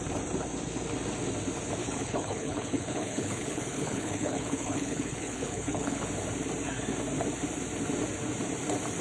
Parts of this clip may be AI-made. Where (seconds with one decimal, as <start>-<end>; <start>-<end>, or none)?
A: 1.8-6.0